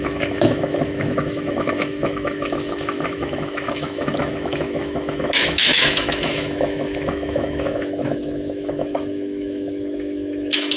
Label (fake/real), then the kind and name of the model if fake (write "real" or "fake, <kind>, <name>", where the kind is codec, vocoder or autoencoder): fake, autoencoder, DAC-VAE